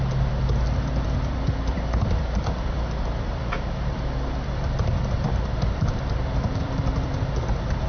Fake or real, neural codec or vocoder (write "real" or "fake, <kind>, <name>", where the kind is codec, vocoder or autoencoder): fake, vocoder, BigVGAN v2